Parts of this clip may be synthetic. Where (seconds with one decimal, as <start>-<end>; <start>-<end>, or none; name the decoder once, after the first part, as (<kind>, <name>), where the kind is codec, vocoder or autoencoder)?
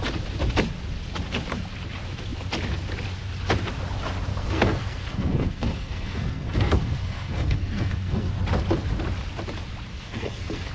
4.3-8.3 (codec, SNAC); 9.9-10.7